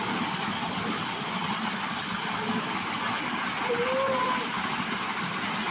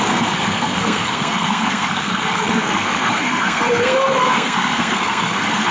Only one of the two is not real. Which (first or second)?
second